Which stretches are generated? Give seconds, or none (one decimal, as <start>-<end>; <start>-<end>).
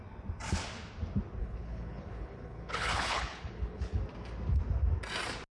1.4-4.0